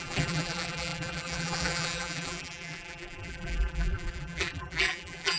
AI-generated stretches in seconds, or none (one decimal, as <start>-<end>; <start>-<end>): 0.0-5.4